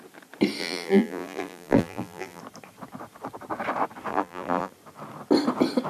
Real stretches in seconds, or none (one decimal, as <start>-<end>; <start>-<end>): 0.0-0.6; 2.4-4.1; 4.7-5.9